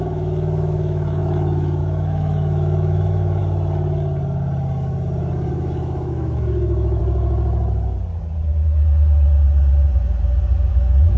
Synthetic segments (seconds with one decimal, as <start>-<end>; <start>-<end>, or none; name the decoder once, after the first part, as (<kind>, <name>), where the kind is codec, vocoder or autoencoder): 0.0-3.4 (autoencoder, DAC-VAE); 5.5-7.0; 10.7-11.2